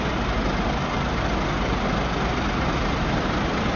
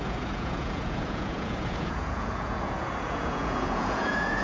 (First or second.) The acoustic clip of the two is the first